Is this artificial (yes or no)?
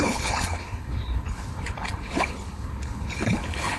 yes